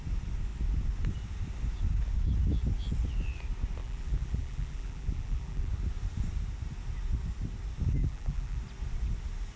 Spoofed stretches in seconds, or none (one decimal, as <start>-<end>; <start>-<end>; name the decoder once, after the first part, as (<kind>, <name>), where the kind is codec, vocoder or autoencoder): 3.8-5.7 (vocoder, BigVGAN v2); 8.0-8.6